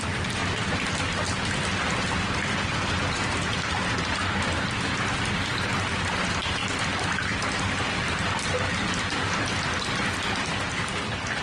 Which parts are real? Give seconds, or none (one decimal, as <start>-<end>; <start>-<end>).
0.4-1.8